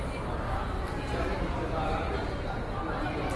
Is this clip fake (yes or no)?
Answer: no